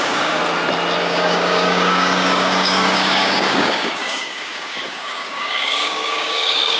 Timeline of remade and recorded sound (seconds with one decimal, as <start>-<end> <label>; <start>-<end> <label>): 0.0-0.4 remade; 0.4-1.0 recorded; 1.0-6.8 remade